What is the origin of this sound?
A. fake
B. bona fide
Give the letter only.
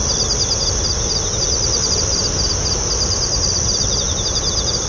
B